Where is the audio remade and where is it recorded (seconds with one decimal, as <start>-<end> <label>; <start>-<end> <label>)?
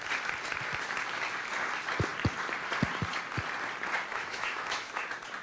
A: 0.0-4.1 recorded; 4.1-5.0 remade; 5.0-5.4 recorded